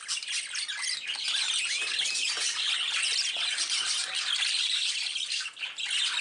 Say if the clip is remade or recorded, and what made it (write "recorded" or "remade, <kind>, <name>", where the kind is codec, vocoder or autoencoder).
recorded